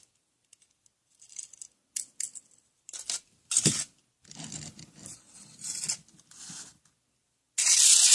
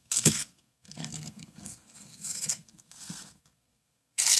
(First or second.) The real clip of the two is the first